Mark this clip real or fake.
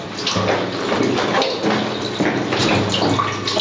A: real